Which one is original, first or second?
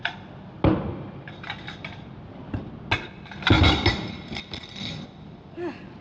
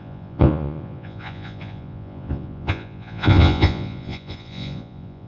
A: first